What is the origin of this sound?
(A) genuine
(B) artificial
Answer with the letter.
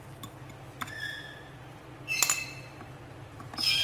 A